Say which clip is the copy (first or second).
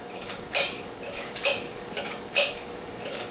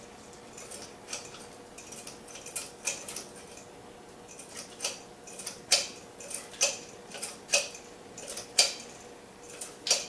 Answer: first